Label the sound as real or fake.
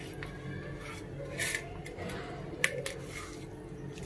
real